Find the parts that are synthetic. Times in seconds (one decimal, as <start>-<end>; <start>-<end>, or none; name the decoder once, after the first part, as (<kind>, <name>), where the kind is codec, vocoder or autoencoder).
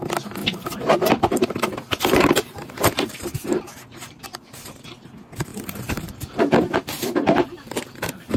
0.4-3.6 (vocoder, BigVGAN v2); 5.5-8.4